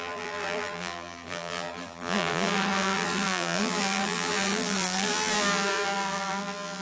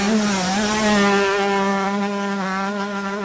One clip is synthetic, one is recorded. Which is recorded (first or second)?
second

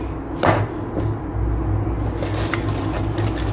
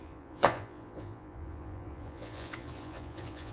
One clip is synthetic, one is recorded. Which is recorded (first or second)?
first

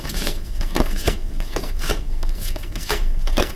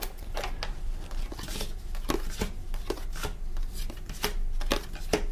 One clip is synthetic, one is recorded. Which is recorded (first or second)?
second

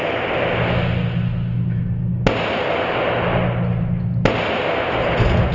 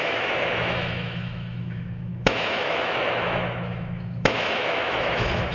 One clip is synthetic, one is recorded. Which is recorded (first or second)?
first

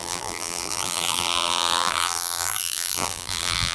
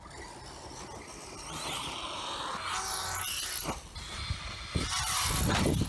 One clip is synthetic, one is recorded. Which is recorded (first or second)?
second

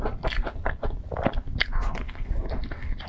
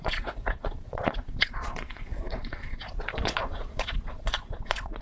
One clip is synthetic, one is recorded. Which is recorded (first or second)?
first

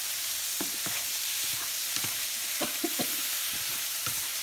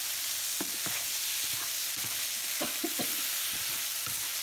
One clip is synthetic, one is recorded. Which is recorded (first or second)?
second